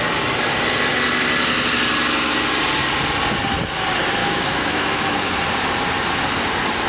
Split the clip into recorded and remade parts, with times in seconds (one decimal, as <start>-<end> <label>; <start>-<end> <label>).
0.0-4.2 recorded; 4.2-5.3 remade; 5.3-6.9 recorded